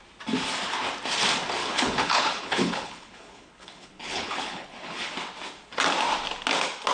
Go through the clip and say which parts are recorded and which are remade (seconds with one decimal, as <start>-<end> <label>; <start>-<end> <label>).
0.0-1.6 recorded; 1.6-5.1 remade; 5.1-6.9 recorded